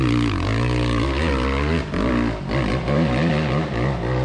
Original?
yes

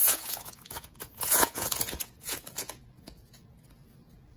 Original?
no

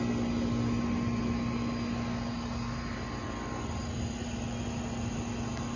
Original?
yes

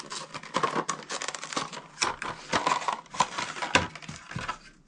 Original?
yes